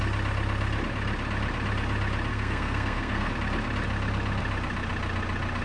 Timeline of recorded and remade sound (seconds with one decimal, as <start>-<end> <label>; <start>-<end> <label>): 0.0-2.3 recorded; 2.3-3.3 remade; 3.3-5.6 recorded